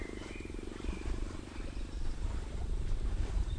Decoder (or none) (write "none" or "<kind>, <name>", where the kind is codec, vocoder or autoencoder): vocoder, BigVGAN v2